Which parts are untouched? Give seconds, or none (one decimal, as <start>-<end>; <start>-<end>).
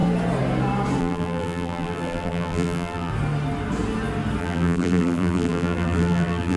0.0-1.0; 3.1-4.4